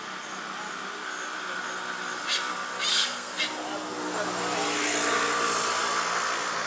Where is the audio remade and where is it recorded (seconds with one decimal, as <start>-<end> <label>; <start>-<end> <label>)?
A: 0.0-2.9 recorded; 2.9-3.4 remade; 3.4-6.7 recorded